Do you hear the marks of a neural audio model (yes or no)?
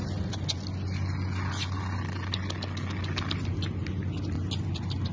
no